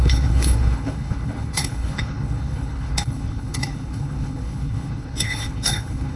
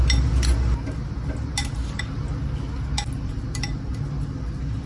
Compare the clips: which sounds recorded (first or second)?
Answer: second